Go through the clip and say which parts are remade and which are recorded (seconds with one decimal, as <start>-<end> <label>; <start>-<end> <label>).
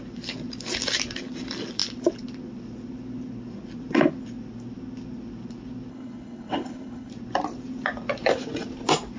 0.0-5.9 recorded; 5.9-7.1 remade; 7.1-9.2 recorded